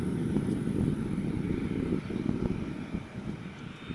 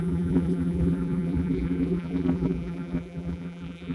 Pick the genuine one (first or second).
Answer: first